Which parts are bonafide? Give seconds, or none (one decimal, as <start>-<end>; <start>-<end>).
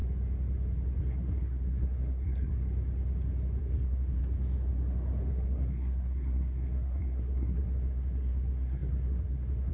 0.0-1.0; 2.5-3.6; 4.2-5.3